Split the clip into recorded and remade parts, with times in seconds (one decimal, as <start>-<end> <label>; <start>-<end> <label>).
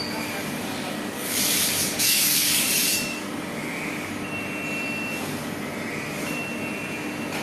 0.0-0.7 recorded; 0.7-4.1 remade; 4.1-7.4 recorded